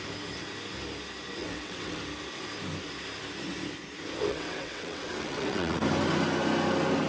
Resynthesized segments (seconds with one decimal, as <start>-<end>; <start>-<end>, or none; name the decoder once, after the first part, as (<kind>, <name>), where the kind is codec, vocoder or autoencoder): 1.4-2.0 (vocoder, WaveNeXt); 4.3-5.8